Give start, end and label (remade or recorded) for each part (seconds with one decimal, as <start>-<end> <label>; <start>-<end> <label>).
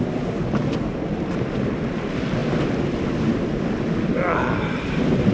0.0-5.3 recorded